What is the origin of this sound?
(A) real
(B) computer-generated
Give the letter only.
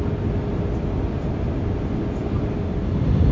A